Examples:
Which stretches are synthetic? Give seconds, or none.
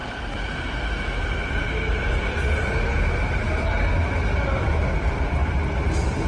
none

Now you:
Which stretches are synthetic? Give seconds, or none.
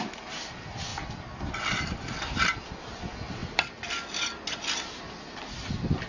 0.9-1.8; 3.4-6.1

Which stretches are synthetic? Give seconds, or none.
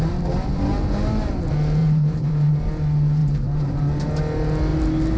1.8-2.5; 3.2-4.2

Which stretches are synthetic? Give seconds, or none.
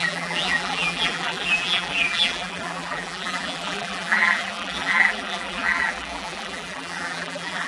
0.0-7.7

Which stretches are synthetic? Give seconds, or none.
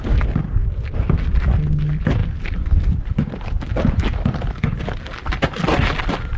0.6-1.4; 2.2-6.0